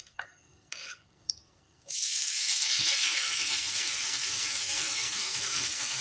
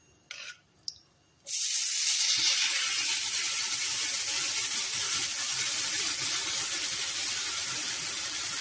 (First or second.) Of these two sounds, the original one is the second